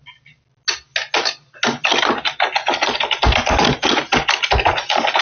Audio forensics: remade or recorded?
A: recorded